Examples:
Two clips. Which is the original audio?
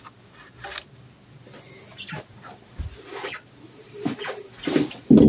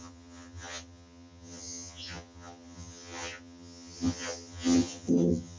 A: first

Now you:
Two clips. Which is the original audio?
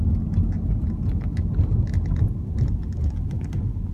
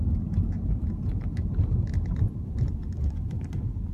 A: first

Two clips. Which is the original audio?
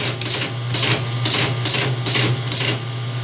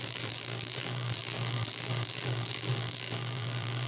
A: first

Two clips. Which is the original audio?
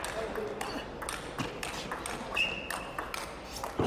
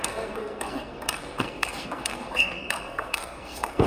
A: first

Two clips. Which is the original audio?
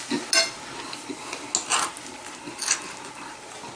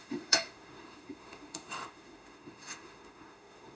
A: first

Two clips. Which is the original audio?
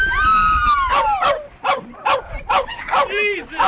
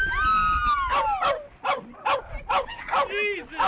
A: second